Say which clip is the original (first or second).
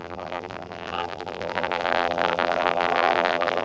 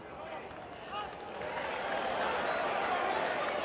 second